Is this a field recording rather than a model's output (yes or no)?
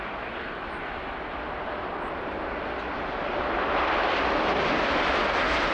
yes